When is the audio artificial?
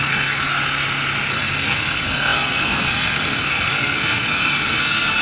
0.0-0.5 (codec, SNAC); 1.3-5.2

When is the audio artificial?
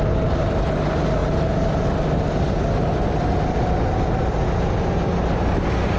none